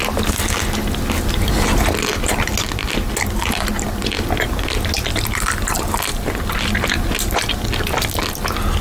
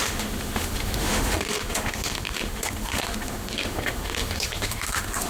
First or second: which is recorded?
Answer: first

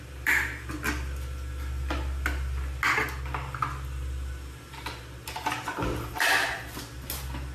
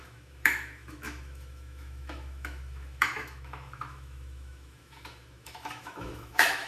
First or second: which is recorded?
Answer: first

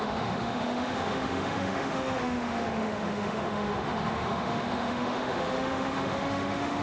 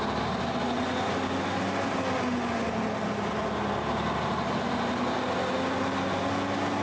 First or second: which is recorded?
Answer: second